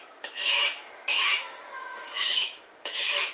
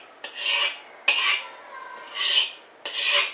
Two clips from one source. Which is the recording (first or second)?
second